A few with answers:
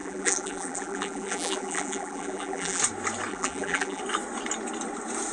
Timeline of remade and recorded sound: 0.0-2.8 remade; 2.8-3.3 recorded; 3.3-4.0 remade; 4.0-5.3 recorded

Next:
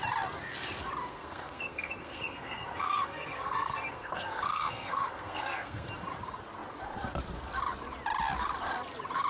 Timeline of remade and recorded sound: 0.0-1.0 recorded; 1.0-5.9 remade; 5.9-9.3 recorded